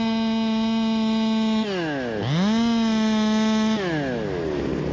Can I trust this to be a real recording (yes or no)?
yes